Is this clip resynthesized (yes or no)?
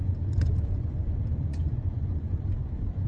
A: yes